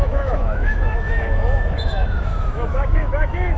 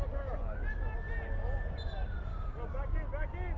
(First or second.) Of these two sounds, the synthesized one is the first